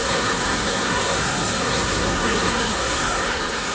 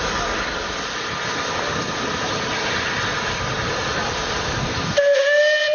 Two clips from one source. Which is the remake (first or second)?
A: first